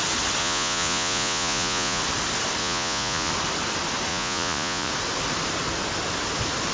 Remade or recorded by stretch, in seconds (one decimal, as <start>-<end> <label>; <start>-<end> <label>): 0.0-0.4 recorded; 0.4-2.0 remade; 2.0-2.6 recorded; 2.6-3.3 remade; 3.3-4.1 recorded; 4.1-4.9 remade; 4.9-6.7 recorded